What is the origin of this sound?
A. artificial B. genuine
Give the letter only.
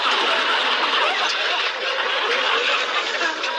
B